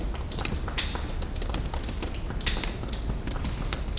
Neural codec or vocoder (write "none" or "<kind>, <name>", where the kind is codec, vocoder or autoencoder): none